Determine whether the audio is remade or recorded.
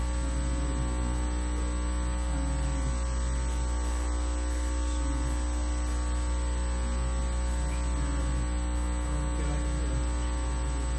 recorded